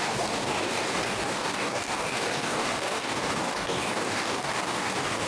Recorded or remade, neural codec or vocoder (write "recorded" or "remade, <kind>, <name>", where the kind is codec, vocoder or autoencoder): remade, codec, DAC